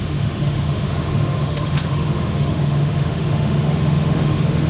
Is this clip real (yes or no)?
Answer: no